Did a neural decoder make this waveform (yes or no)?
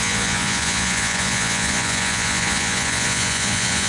yes